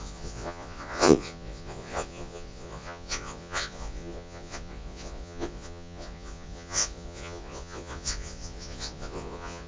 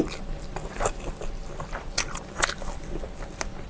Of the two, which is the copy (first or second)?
first